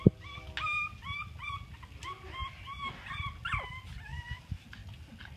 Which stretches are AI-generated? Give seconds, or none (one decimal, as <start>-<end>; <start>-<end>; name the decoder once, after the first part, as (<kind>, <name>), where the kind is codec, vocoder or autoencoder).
none